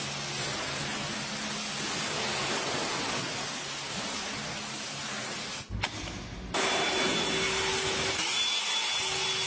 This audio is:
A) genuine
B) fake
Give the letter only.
A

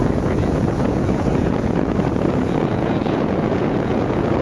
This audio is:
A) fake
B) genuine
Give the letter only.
A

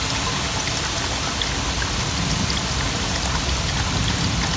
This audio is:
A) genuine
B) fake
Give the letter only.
A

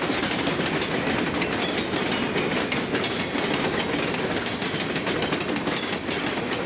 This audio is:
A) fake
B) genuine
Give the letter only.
B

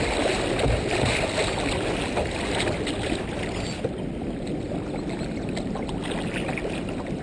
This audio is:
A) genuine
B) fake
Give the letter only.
A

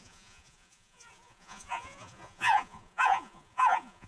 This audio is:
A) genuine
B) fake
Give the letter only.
B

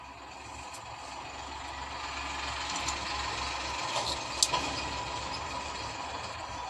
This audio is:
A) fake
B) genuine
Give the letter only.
B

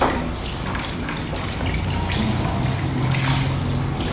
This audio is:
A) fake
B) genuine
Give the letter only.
B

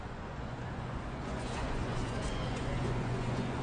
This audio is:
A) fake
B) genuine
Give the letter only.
A